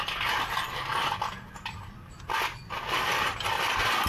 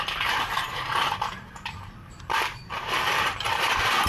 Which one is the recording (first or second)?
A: first